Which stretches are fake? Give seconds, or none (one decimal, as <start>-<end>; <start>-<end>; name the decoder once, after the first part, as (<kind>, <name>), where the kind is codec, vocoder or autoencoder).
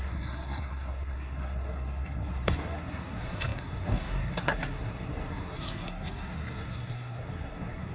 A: 0.0-7.9 (codec, SNAC)